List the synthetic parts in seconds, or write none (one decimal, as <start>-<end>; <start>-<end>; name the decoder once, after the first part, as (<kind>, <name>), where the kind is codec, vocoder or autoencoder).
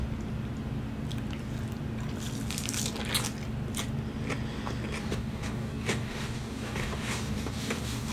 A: 5.0-8.1 (codec, DAC)